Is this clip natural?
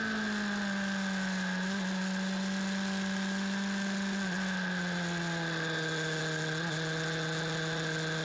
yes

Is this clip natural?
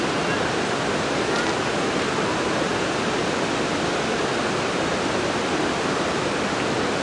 yes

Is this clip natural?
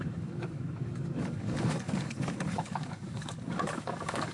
no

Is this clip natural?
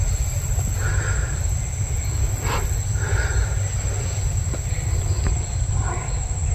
yes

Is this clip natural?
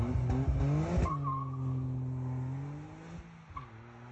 yes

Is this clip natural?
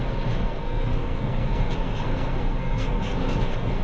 no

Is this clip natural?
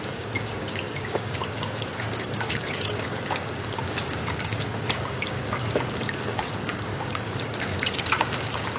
no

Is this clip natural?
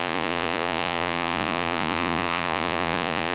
no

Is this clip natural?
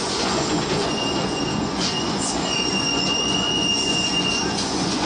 no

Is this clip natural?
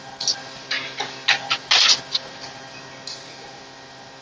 yes